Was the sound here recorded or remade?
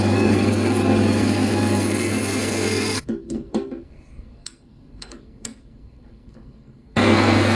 remade